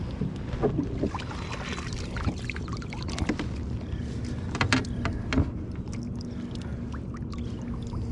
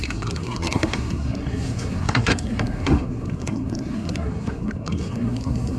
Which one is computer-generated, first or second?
second